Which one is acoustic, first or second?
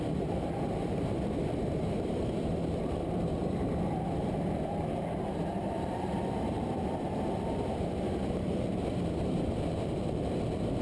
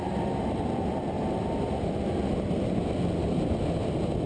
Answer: second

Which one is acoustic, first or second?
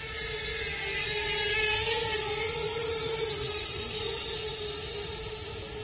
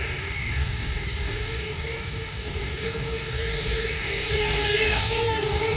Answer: first